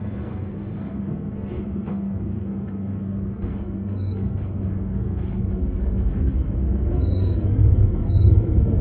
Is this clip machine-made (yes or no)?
yes